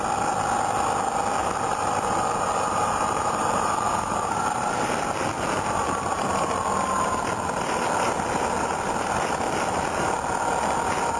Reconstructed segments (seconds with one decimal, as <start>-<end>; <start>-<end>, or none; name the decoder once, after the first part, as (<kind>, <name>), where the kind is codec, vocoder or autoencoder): 1.4-4.9 (vocoder, BigVGAN v2)